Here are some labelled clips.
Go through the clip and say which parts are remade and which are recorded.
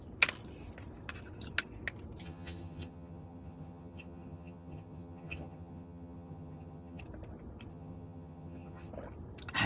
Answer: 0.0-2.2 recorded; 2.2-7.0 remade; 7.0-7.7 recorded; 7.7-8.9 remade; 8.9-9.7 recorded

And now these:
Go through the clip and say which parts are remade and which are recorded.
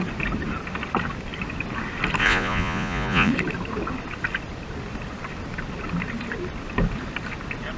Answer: 0.0-2.2 recorded; 2.2-3.3 remade; 3.3-7.8 recorded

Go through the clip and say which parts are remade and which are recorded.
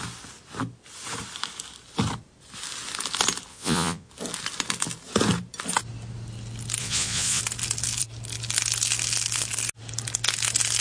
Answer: 0.0-3.5 recorded; 3.5-4.1 remade; 4.1-6.8 recorded; 6.8-7.4 remade; 7.4-10.8 recorded